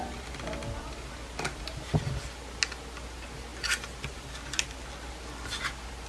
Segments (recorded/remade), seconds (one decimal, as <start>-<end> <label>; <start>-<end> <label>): 0.0-6.1 recorded